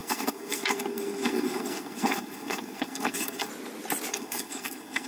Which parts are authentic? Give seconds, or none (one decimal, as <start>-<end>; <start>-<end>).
3.5-4.1